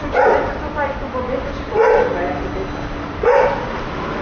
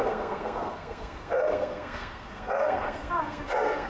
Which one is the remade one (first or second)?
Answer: second